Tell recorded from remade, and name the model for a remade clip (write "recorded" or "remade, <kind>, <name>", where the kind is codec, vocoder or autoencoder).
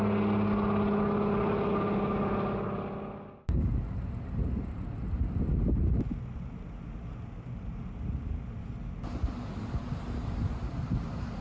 recorded